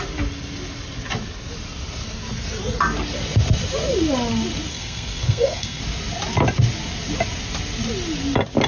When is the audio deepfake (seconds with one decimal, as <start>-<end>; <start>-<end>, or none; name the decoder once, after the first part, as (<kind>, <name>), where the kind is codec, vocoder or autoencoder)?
4.7-5.8 (codec, SNAC)